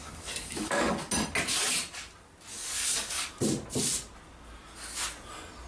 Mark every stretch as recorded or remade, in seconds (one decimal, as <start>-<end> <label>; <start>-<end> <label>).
0.0-1.0 remade; 1.0-2.5 recorded; 2.5-3.3 remade; 3.3-5.7 recorded